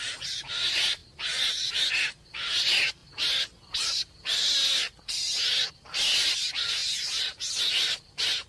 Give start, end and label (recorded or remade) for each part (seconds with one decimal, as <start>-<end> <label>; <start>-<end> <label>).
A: 0.0-8.5 recorded